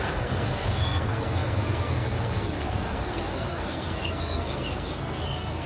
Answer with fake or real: fake